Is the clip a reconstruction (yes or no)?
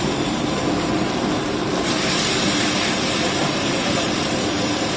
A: yes